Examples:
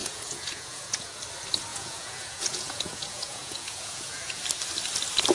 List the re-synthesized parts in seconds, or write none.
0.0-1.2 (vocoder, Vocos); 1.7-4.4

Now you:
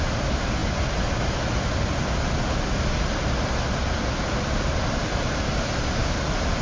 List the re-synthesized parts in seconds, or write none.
none

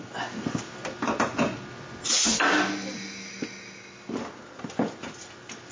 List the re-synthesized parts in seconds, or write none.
none

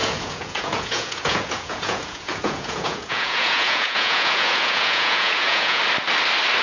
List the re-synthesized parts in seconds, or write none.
0.0-5.8 (vocoder, Vocos)

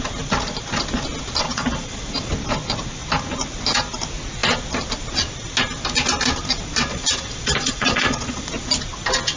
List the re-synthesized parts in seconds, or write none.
1.4-2.3 (vocoder, Vocos); 6.9-8.7

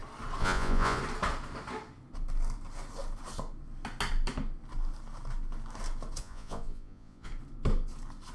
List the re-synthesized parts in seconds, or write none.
0.4-1.0 (vocoder, Vocos); 6.2-7.3